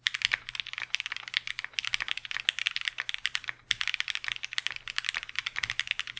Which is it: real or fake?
real